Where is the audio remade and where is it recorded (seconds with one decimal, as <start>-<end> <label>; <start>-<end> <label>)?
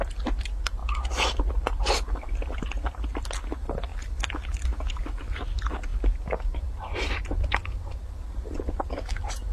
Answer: 0.0-0.8 recorded; 0.8-1.5 remade; 1.5-5.9 recorded; 5.9-6.6 remade; 6.6-9.5 recorded